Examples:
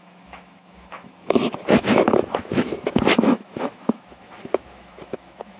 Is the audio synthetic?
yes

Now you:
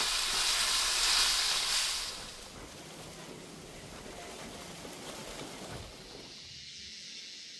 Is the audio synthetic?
no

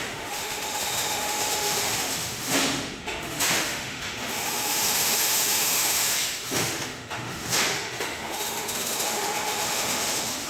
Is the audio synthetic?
yes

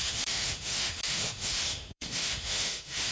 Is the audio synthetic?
yes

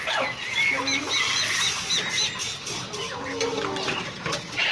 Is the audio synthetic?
no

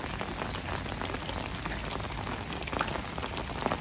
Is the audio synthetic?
no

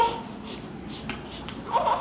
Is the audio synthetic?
no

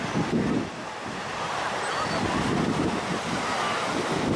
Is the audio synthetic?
no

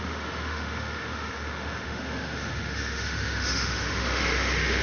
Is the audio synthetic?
yes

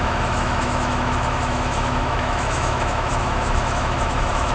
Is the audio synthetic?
yes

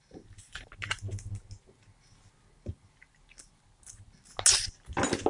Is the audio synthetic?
no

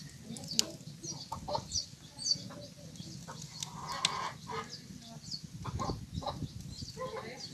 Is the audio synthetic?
no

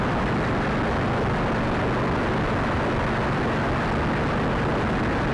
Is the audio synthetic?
no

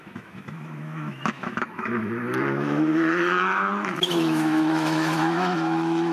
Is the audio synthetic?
yes